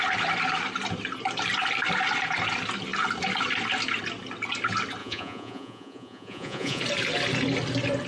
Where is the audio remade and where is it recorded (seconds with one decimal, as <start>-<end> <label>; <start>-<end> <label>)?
0.0-5.0 recorded; 5.0-6.8 remade; 6.8-8.1 recorded